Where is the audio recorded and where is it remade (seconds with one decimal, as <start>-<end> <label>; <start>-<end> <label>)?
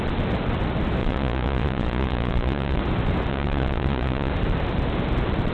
0.0-1.0 recorded; 1.0-2.8 remade; 2.8-3.3 recorded; 3.3-4.3 remade; 4.3-5.5 recorded